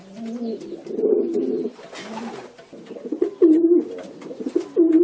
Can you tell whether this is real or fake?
real